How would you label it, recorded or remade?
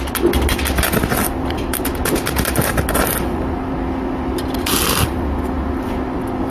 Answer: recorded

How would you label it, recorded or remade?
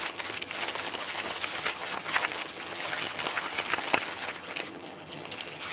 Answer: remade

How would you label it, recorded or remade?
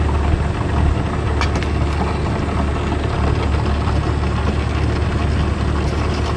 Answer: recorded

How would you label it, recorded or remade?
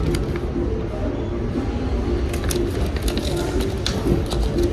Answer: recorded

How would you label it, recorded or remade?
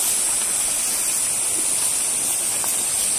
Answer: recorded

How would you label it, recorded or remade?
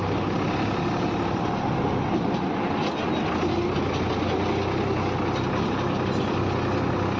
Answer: recorded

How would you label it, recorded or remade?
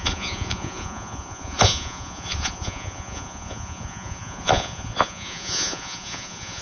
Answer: remade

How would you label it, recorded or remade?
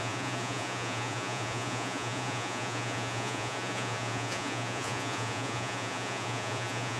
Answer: remade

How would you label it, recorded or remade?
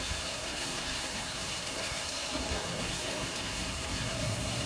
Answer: remade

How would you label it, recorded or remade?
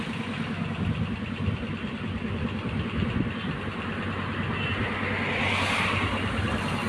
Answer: recorded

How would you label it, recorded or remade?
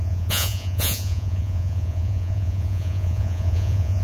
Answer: remade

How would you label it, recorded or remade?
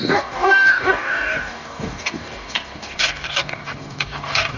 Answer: remade